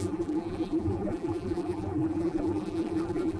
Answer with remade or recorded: remade